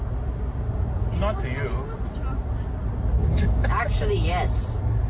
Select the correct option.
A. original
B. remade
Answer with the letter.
A